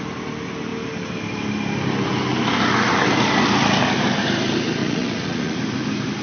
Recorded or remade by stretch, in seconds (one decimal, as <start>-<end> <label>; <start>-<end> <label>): 0.0-4.8 recorded; 4.8-5.6 remade; 5.6-6.2 recorded

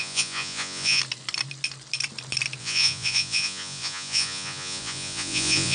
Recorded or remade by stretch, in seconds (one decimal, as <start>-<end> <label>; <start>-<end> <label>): 0.0-1.0 remade; 1.0-2.6 recorded; 2.6-5.7 remade

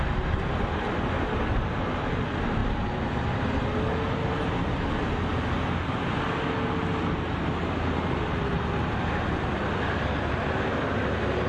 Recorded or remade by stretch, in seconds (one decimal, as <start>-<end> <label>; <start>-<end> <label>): 0.0-11.5 recorded